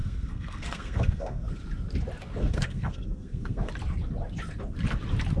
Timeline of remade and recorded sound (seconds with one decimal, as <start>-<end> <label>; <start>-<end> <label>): 0.0-1.5 remade; 1.5-2.4 recorded; 2.4-3.7 remade; 3.7-5.4 recorded